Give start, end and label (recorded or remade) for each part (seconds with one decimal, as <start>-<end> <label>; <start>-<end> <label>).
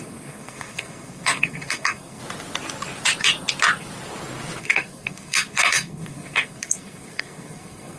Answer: 0.0-2.2 remade; 2.2-4.6 recorded; 4.6-8.0 remade